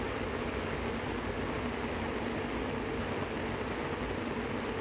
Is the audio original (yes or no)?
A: yes